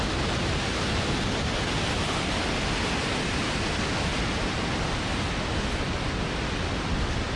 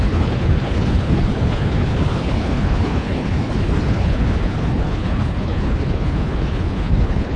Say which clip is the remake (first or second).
second